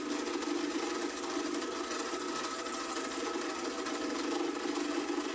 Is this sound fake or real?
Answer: real